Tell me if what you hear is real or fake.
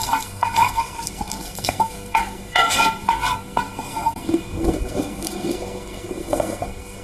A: fake